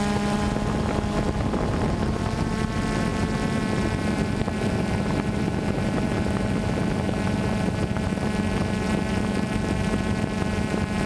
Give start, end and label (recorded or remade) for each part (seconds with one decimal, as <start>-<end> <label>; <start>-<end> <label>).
0.0-11.1 recorded